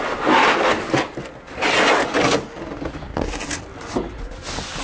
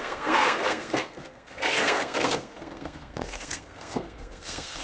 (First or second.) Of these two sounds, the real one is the first